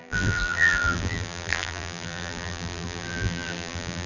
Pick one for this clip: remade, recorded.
remade